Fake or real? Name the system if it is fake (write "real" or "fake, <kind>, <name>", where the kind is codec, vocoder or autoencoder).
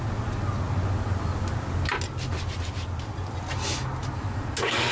real